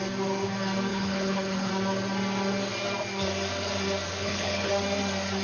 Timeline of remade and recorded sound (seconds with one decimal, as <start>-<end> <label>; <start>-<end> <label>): 0.0-0.9 recorded; 0.9-1.7 remade; 1.7-4.1 recorded; 4.1-4.7 remade; 4.7-5.4 recorded